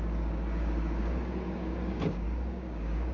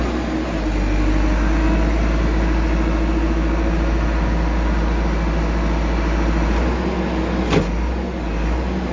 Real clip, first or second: second